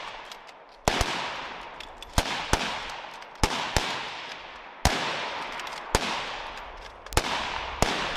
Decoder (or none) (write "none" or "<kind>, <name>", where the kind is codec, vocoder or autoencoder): none